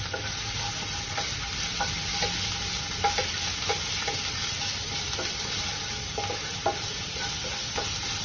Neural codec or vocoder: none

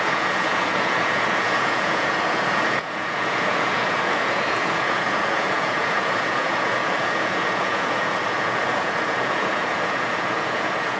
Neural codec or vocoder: vocoder, Vocos